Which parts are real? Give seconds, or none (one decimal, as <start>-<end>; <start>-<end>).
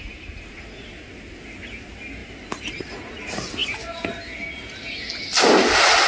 0.0-2.2; 2.8-6.1